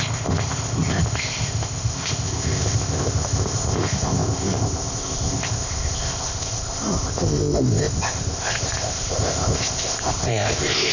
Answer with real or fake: fake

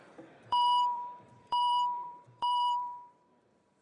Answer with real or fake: fake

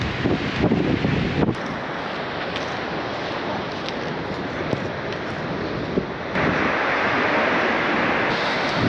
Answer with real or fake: real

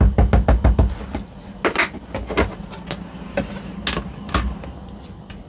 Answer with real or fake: real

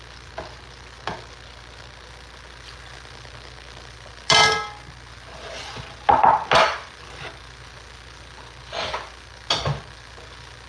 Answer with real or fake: real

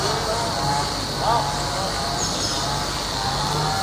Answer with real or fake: real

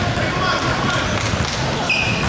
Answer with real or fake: real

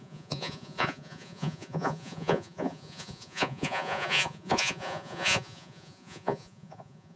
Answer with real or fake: fake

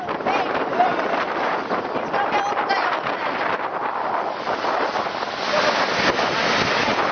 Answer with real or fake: fake